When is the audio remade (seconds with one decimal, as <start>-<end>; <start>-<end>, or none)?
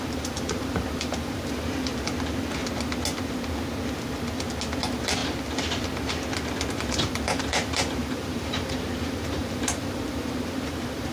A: 0.0-1.9; 4.8-5.2; 6.7-11.1